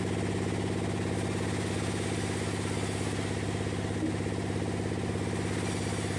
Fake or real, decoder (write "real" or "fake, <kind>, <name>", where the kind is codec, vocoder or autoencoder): real